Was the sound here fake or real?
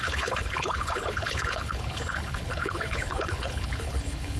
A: fake